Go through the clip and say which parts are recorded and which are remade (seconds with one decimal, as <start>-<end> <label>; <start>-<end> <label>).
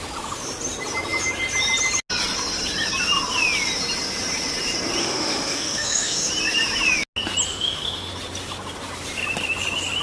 0.0-5.0 recorded; 5.0-6.3 remade; 6.3-7.5 recorded; 7.5-8.1 remade; 8.1-10.0 recorded